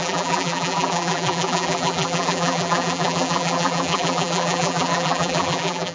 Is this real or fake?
fake